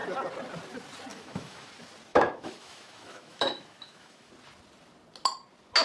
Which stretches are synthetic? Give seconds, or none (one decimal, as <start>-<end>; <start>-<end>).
1.1-1.7; 2.1-4.3